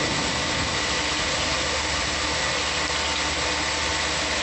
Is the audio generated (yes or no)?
no